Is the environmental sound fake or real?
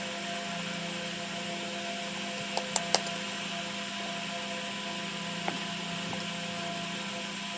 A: real